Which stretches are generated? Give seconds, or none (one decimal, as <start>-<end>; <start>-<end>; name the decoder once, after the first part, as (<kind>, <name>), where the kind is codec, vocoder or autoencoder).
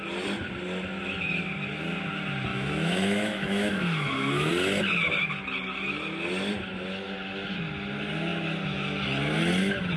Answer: 2.5-4.5 (autoencoder, DAC-VAE)